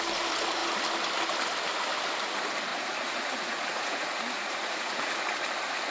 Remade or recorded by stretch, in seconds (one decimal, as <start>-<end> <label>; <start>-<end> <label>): 0.0-2.7 recorded; 2.7-5.2 remade; 5.2-5.9 recorded